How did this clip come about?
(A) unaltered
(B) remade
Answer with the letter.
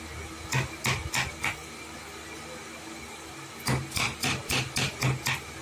A